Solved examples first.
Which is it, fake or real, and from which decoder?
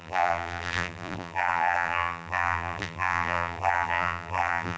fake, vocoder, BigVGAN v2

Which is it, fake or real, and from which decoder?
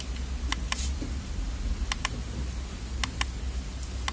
real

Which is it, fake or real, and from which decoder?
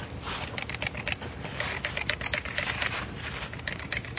real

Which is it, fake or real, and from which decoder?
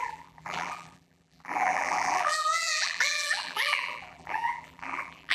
fake, vocoder, BigVGAN v2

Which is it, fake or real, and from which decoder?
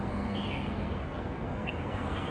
fake, codec, SNAC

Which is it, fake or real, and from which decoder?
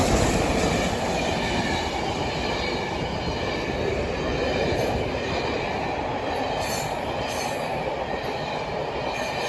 real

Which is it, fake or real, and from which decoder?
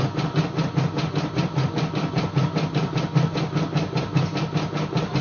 real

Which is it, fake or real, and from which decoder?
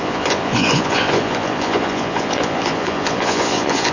fake, vocoder, Vocos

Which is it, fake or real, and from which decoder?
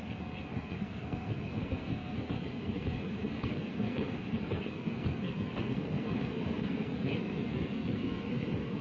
fake, codec, SNAC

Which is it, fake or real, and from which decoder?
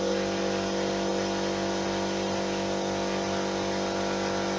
real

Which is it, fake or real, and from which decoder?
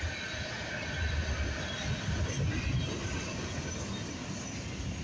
real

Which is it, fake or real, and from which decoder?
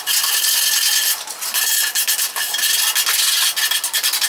real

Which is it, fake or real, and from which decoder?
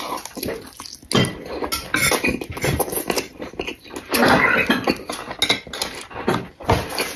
real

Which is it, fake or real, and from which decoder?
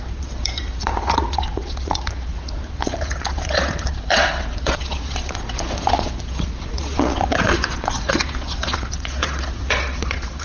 fake, vocoder, Vocos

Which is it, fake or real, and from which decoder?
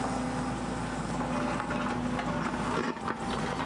real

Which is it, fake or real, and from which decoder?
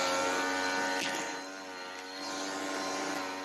real